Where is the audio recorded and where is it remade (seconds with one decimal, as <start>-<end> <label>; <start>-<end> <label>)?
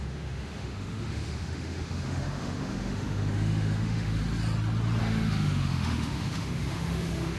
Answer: 0.0-4.2 remade; 4.2-5.0 recorded; 5.0-7.4 remade